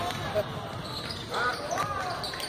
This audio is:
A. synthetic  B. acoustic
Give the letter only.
A